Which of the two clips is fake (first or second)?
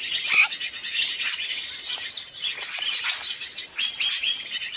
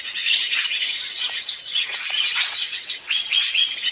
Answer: second